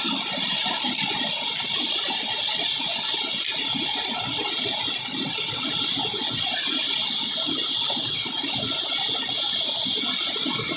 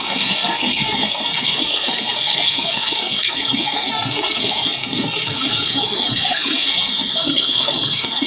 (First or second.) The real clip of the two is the first